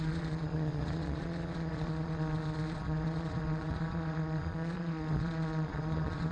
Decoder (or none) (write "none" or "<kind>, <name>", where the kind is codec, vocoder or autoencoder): vocoder, Vocos